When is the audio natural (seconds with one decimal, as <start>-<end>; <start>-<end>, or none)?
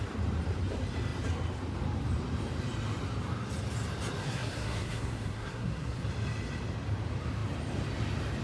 0.0-4.2; 6.1-8.4